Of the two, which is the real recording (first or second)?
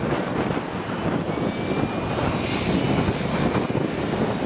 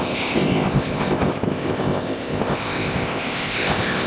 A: first